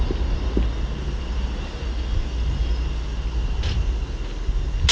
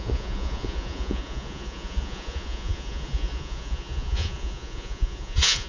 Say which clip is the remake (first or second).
second